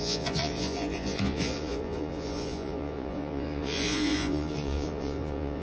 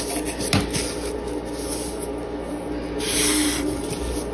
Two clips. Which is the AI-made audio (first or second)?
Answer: first